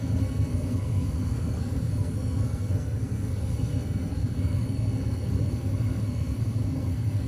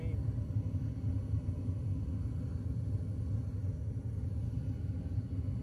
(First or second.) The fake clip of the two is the first